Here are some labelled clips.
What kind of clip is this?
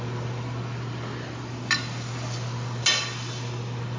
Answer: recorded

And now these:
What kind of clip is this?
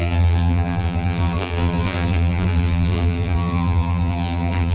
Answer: remade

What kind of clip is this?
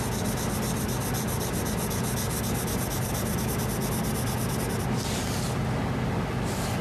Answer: recorded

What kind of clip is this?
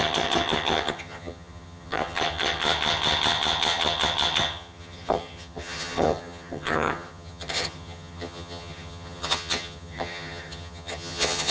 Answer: remade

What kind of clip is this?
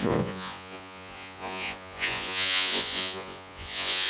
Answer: remade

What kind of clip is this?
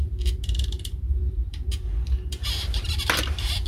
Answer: remade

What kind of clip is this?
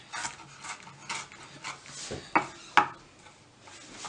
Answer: recorded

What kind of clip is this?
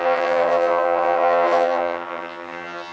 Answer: remade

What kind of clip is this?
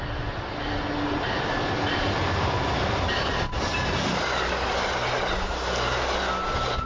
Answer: recorded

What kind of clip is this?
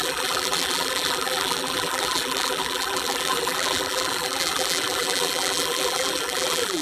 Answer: remade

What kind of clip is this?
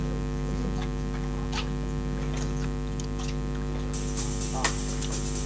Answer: recorded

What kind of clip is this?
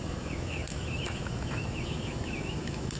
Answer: remade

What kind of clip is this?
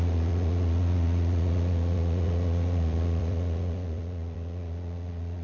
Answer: remade